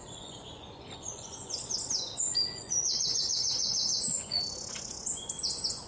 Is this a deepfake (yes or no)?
yes